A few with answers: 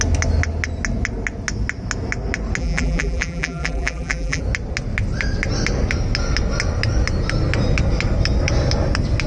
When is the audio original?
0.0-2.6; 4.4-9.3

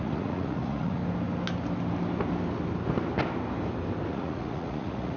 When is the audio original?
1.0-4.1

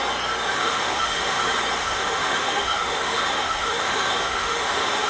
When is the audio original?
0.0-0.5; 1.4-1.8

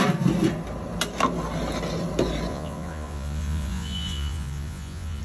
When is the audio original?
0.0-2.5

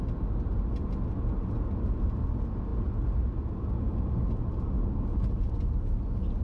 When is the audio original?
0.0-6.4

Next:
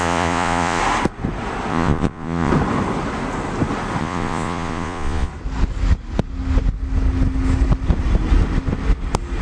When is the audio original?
0.8-1.7; 2.5-4.0; 5.3-9.4

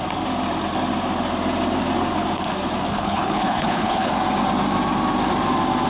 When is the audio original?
0.0-2.9; 4.1-5.9

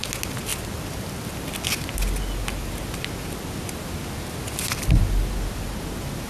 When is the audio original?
0.0-6.3